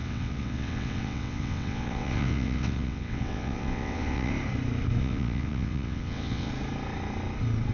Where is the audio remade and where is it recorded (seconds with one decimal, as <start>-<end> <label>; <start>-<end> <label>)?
0.0-4.3 remade; 4.3-5.0 recorded; 5.0-6.5 remade; 6.5-7.7 recorded